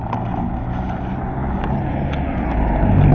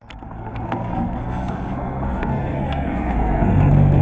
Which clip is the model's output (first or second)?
second